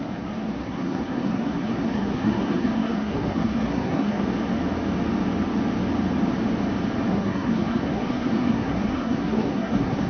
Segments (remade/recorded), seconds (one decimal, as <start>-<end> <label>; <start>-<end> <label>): 0.0-4.2 remade; 4.2-7.1 recorded; 7.1-10.1 remade